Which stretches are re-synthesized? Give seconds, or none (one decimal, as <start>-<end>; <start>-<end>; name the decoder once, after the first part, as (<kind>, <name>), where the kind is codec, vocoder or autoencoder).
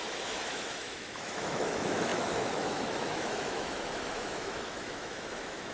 0.0-5.7 (autoencoder, DAC-VAE)